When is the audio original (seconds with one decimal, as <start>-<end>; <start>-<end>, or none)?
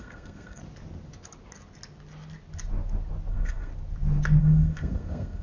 0.6-3.3; 3.7-4.4